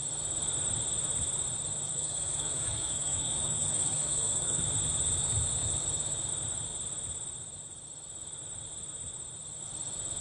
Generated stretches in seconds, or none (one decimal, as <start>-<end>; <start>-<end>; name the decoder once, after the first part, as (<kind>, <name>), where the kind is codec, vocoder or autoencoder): 1.9-4.6 (codec, SNAC)